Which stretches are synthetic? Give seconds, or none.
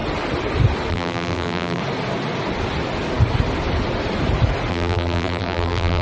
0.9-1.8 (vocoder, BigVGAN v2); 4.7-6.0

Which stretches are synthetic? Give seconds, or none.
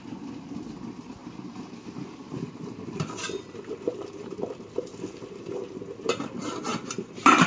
1.2-4.4 (vocoder, BigVGAN v2); 5.5-6.3; 6.7-7.5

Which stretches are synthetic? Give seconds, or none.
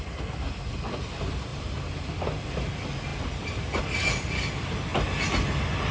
1.5-2.2 (vocoder, BigVGAN v2); 3.1-3.8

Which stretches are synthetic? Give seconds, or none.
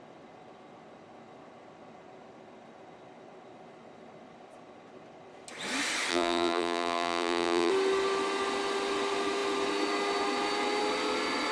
6.1-7.7 (vocoder, BigVGAN v2)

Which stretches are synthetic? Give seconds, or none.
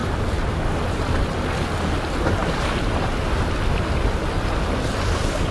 2.4-3.3 (vocoder, BigVGAN v2)